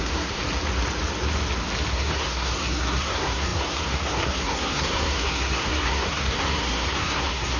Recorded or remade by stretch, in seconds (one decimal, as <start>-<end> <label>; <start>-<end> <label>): 0.0-0.4 remade; 0.4-1.9 recorded; 1.9-7.6 remade